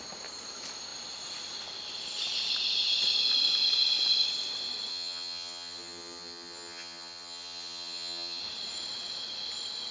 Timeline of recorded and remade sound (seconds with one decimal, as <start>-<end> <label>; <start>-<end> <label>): 0.0-4.9 recorded; 4.9-8.4 remade; 8.4-9.9 recorded